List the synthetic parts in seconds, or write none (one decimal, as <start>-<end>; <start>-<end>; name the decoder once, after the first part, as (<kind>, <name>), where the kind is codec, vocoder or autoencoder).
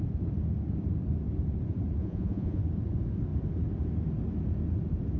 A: 2.0-2.6 (vocoder, Vocos)